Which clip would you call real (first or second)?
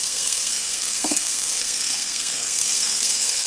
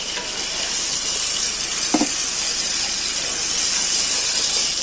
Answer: second